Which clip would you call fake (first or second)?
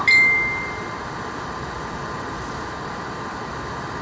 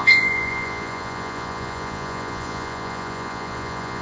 second